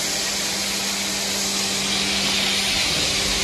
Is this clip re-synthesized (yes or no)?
no